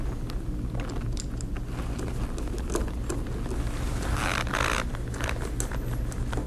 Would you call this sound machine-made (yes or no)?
no